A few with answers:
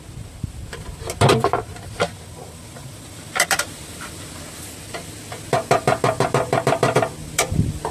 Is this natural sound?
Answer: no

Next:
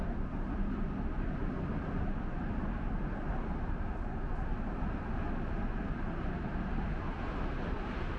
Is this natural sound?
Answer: yes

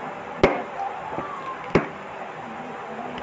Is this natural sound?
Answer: yes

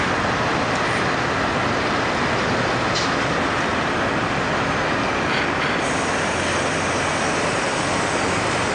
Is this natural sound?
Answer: yes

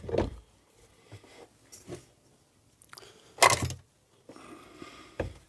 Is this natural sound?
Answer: yes